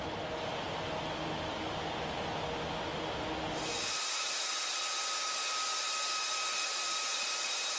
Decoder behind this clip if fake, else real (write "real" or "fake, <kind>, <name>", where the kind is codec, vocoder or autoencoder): real